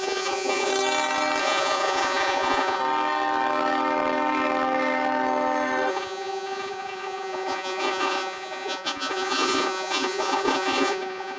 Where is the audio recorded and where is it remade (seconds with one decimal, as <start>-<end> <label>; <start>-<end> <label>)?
0.0-0.7 remade; 0.7-1.4 recorded; 1.4-2.8 remade; 2.8-5.9 recorded; 5.9-11.4 remade